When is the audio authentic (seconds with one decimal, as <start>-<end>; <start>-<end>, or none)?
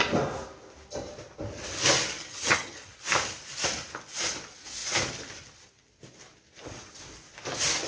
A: 0.0-2.3; 2.9-7.9